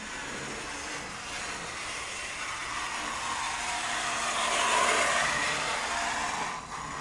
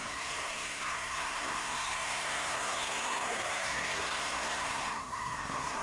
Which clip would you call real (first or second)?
first